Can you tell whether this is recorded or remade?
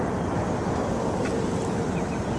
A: recorded